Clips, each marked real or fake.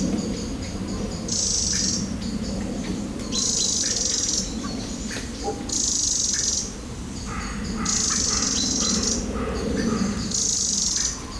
real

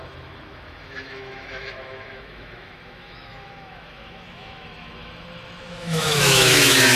fake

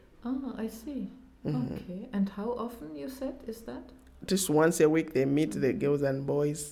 real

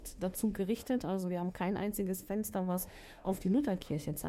fake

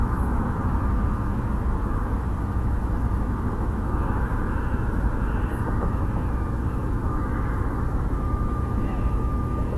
fake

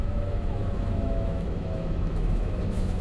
fake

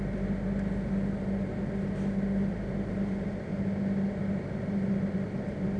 real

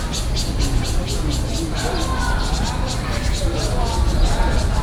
real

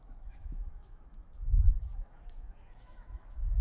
fake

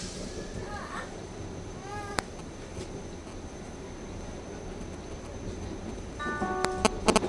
real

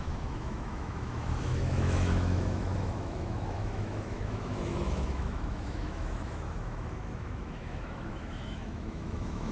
fake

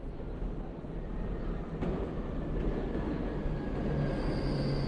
real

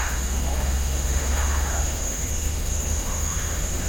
fake